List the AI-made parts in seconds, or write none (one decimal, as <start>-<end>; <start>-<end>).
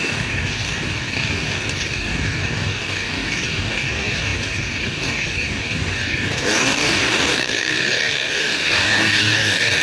0.0-9.8